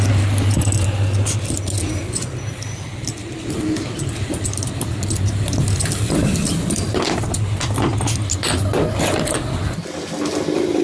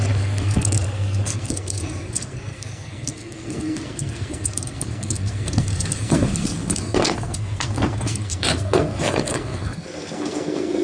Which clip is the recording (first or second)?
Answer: first